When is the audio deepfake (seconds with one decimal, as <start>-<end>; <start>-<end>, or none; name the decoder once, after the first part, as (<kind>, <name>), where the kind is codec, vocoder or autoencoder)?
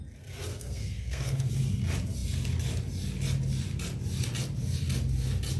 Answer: 0.5-1.5 (codec, SNAC)